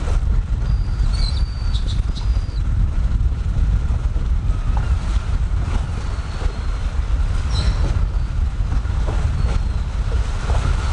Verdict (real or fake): real